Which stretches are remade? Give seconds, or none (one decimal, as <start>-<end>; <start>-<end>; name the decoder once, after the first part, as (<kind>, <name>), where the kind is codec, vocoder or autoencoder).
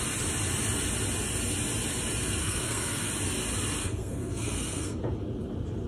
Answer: 2.4-3.1 (codec, SNAC); 3.8-5.0